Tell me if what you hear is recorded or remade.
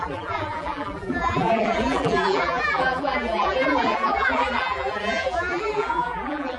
remade